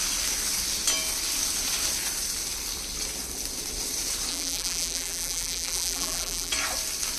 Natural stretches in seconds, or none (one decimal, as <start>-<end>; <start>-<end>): 0.0-4.3; 6.5-7.2

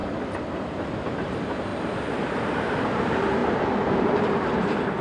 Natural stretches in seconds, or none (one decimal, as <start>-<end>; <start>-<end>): 0.0-0.9

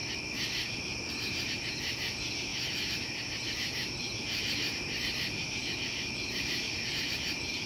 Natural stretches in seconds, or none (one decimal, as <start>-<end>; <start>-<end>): 0.0-1.1

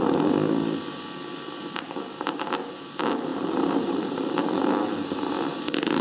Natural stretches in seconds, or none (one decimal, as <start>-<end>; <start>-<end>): 0.0-3.3; 5.6-6.0